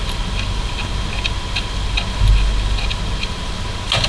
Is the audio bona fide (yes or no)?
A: yes